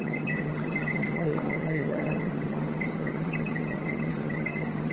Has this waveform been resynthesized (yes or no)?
yes